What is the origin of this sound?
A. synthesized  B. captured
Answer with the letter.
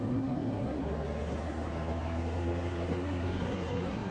A